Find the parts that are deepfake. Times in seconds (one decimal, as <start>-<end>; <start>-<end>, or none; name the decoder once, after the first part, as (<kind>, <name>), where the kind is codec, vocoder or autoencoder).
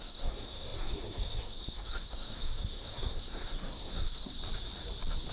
0.0-4.4 (codec, SNAC)